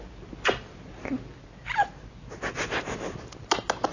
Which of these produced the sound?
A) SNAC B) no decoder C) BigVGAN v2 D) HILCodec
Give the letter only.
B